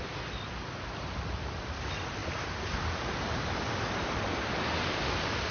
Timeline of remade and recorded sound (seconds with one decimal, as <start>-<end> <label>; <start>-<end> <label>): 0.0-5.5 recorded